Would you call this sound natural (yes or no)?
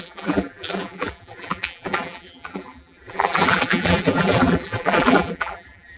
no